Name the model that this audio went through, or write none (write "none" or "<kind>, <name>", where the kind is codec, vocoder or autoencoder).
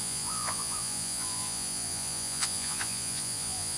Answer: vocoder, Vocos